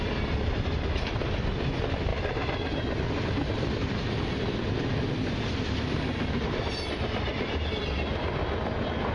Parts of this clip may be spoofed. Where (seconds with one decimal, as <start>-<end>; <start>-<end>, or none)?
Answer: none